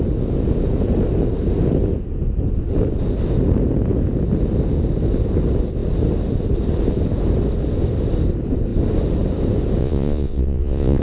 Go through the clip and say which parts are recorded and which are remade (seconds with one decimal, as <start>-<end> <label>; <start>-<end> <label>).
0.0-9.8 recorded; 9.8-11.0 remade